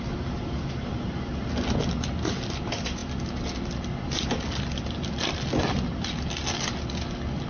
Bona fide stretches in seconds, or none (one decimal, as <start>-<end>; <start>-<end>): 0.0-7.5